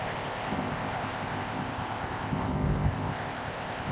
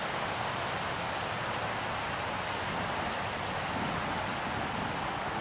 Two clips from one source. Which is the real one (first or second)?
second